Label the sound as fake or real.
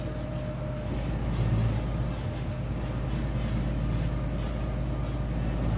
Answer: real